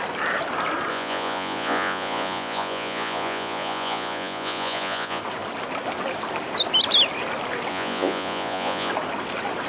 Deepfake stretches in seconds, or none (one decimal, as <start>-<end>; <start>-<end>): 0.9-5.2; 7.7-8.9